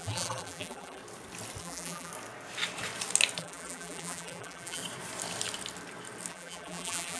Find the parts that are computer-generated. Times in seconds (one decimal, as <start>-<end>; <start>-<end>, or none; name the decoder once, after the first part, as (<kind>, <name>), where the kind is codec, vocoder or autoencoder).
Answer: 0.0-1.0 (vocoder, BigVGAN v2); 1.6-2.1; 3.4-4.8; 6.3-7.2